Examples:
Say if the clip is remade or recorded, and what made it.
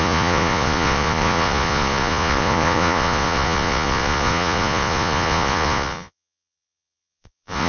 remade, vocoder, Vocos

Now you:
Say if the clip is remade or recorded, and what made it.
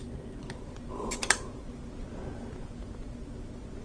recorded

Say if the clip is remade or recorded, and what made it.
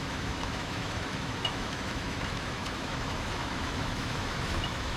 remade, autoencoder, DAC-VAE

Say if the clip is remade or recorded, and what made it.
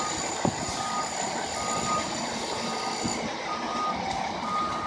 recorded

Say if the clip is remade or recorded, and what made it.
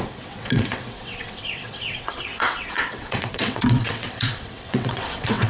remade, vocoder, WaveNeXt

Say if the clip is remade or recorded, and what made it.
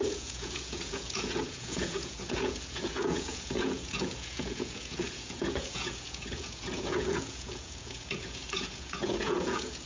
remade, vocoder, Vocos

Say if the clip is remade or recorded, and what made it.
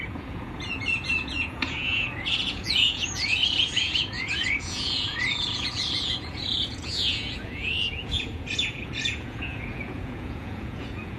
remade, vocoder, Vocos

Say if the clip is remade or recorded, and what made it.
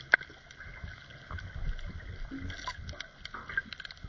recorded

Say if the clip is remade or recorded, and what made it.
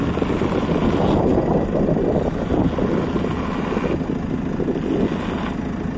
recorded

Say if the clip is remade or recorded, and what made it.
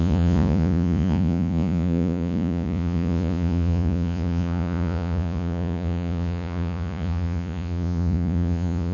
remade, vocoder, Vocos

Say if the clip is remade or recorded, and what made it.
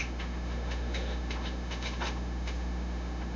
remade, autoencoder, DAC-VAE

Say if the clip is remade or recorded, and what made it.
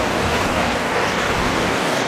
remade, codec, DAC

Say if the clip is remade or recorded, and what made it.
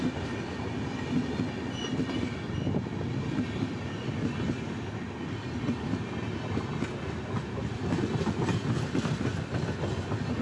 recorded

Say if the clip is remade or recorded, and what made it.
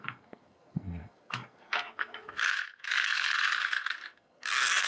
remade, codec, SNAC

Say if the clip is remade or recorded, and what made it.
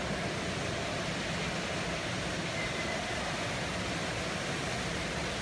recorded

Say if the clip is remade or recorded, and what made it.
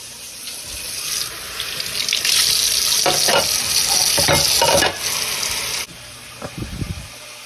recorded